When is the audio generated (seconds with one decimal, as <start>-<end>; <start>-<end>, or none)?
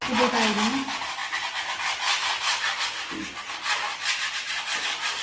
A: none